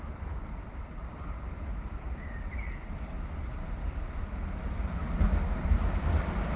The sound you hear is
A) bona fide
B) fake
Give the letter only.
A